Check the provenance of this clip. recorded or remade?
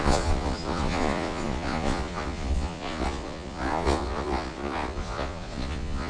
remade